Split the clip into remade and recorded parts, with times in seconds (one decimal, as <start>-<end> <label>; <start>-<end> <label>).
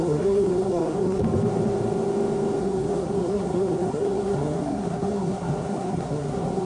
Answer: 0.0-1.2 remade; 1.2-2.6 recorded; 2.6-6.6 remade